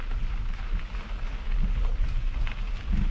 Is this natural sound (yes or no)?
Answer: yes